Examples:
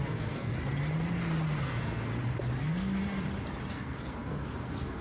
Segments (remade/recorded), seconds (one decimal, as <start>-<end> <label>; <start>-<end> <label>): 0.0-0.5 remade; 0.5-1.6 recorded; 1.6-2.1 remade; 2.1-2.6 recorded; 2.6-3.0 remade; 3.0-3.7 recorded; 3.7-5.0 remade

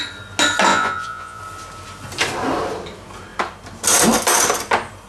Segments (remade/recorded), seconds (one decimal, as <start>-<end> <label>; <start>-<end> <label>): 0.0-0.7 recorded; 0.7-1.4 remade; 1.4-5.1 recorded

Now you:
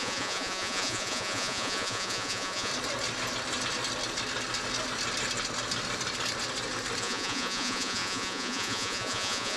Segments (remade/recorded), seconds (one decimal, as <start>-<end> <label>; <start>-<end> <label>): 0.0-2.7 remade; 2.7-7.0 recorded; 7.0-9.6 remade